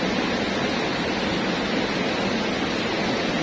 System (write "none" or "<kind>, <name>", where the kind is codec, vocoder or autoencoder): none